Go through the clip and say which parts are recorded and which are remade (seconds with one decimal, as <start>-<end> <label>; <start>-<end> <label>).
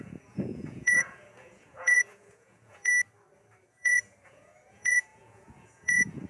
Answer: 0.0-2.9 remade; 2.9-3.7 recorded; 3.7-6.3 remade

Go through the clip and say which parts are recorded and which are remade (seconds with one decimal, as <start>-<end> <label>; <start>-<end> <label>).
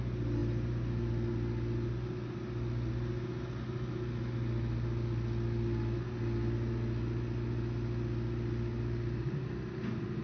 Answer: 0.0-10.2 recorded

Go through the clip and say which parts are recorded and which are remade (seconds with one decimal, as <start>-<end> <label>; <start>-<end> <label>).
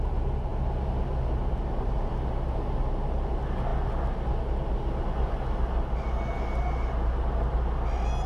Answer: 0.0-8.3 recorded